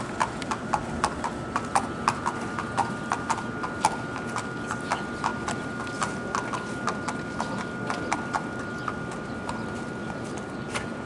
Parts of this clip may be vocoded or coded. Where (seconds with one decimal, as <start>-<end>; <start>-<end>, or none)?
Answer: none